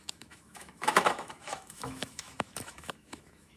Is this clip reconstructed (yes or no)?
yes